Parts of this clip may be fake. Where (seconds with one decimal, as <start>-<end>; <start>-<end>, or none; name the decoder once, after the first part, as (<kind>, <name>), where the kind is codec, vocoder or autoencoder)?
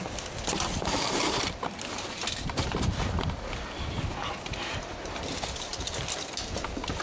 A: none